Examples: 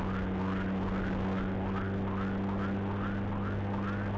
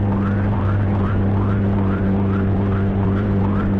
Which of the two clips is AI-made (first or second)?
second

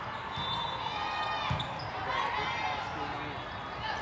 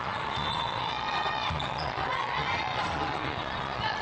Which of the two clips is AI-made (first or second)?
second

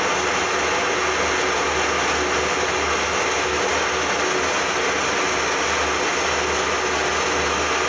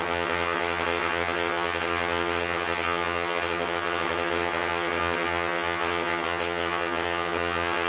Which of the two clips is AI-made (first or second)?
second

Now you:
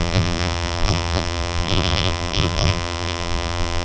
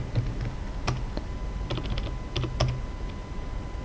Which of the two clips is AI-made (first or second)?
first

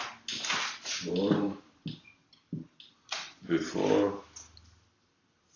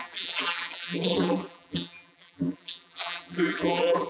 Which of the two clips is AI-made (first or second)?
second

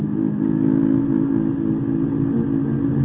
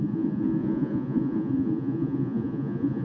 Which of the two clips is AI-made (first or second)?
second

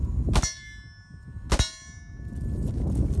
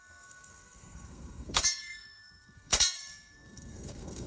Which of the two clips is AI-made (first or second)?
second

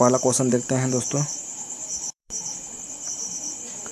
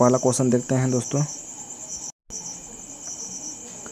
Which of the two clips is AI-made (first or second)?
first